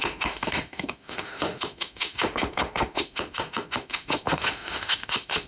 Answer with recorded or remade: remade